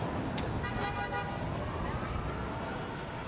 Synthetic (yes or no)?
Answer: no